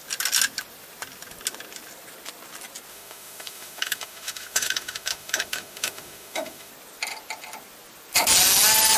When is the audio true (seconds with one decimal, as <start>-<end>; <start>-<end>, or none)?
0.0-2.9; 6.7-9.0